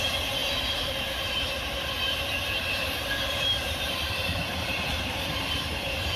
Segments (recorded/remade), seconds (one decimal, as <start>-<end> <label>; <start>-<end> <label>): 0.0-6.2 remade